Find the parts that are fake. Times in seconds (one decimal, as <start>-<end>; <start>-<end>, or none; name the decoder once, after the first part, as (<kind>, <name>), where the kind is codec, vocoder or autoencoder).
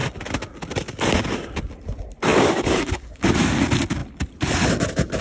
2.3-3.3 (codec, DAC)